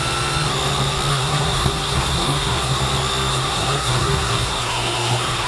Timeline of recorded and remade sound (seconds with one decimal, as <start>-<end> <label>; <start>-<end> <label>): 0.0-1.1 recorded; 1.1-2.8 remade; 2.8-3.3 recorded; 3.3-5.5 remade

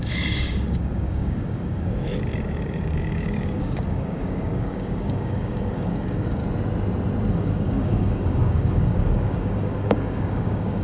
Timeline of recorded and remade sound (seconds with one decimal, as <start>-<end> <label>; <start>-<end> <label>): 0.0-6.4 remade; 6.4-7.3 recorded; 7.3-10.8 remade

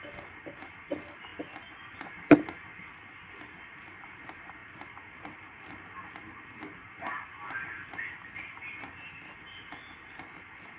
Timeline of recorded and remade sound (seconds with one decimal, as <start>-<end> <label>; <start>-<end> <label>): 0.0-4.6 recorded; 4.6-9.3 remade; 9.3-10.8 recorded

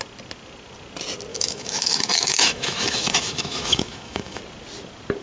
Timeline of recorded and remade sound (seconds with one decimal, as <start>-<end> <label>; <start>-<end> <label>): 0.0-1.3 recorded; 1.3-4.4 remade; 4.4-5.2 recorded

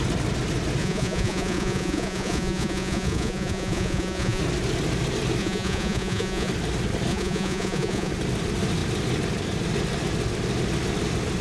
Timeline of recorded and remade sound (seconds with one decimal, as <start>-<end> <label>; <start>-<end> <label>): 0.0-0.8 recorded; 0.8-4.4 remade; 4.4-5.4 recorded; 5.4-6.5 remade; 6.5-7.1 recorded; 7.1-8.1 remade; 8.1-11.4 recorded

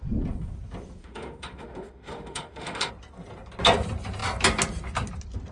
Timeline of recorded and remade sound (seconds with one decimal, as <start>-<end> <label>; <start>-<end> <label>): 0.0-1.0 recorded; 1.0-2.9 remade; 2.9-5.5 recorded

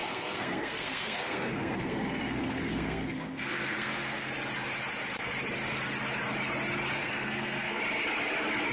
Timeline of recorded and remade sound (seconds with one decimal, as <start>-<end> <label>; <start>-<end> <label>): 0.0-4.3 remade; 4.3-7.0 recorded; 7.0-7.8 remade; 7.8-8.7 recorded